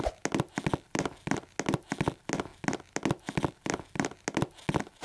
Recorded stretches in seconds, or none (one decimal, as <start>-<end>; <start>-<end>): 0.0-5.0